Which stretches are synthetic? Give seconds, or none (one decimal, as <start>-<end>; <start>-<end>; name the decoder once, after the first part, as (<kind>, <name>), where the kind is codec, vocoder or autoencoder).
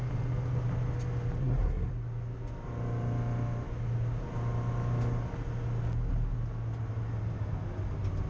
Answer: 1.4-1.9 (codec, SNAC)